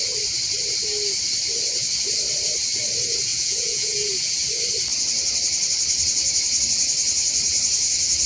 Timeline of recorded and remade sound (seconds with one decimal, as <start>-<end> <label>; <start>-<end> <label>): 0.0-3.3 recorded; 3.3-4.4 remade; 4.4-8.3 recorded